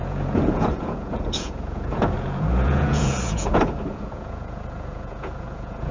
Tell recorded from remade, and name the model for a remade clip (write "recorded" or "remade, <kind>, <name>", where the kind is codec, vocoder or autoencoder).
remade, vocoder, Vocos